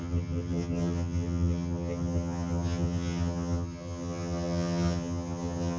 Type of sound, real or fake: fake